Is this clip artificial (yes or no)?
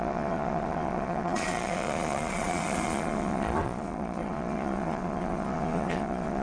yes